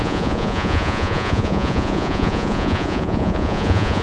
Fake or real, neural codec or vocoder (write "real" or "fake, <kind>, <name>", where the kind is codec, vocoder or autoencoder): fake, vocoder, Vocos